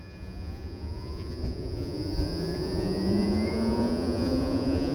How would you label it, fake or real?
fake